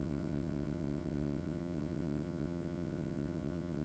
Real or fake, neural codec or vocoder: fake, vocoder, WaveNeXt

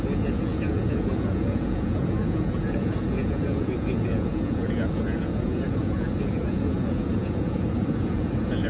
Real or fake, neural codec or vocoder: fake, vocoder, Vocos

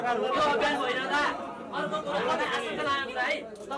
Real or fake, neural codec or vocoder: real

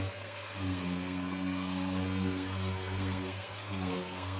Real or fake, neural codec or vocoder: fake, codec, SNAC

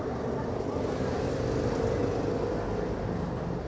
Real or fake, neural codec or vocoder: real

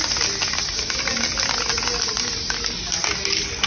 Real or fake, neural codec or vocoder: real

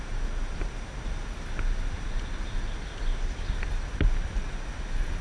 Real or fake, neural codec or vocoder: real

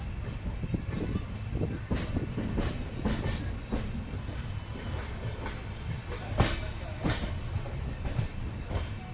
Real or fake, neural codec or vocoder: real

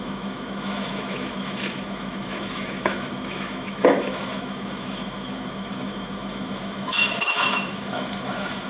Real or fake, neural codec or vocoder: fake, autoencoder, DAC-VAE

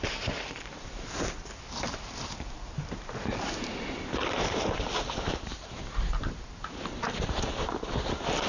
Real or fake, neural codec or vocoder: fake, vocoder, BigVGAN v2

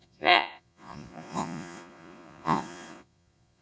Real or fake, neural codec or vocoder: fake, vocoder, Vocos